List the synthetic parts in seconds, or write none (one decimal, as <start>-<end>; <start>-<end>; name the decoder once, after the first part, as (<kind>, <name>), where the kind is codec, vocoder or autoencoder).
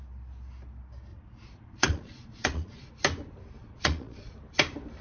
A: 1.1-2.9 (vocoder, Vocos); 3.6-4.3